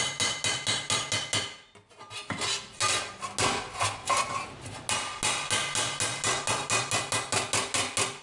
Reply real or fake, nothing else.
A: real